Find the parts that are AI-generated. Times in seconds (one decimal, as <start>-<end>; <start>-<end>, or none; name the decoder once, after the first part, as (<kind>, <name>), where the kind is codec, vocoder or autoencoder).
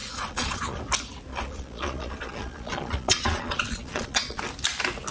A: 0.0-0.8 (vocoder, Vocos); 1.3-4.4